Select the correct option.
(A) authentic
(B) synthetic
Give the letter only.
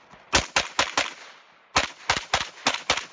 A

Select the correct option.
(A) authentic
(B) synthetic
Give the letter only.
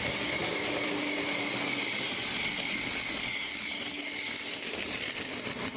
A